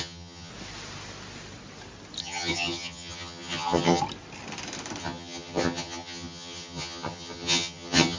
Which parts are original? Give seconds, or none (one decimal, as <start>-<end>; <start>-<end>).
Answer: 0.5-2.2; 4.0-5.0